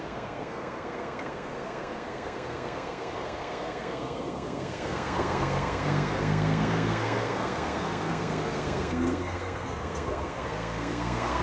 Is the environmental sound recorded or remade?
remade